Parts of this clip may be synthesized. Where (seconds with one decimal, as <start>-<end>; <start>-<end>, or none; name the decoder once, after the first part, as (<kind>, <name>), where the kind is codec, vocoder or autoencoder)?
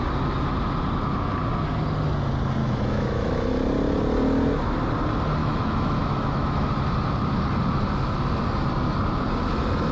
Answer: 2.6-3.5 (autoencoder, DAC-VAE); 5.4-6.7